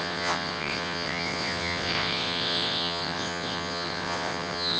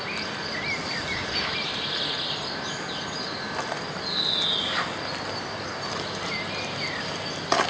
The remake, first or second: first